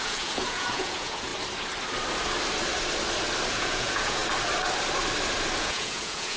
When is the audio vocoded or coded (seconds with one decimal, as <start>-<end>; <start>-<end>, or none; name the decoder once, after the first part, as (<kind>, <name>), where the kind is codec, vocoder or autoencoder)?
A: 0.0-1.3 (vocoder, Vocos); 3.5-4.2; 5.6-6.4